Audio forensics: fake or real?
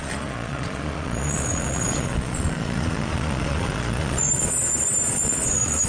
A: fake